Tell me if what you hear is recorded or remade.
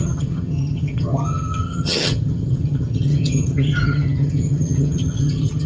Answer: remade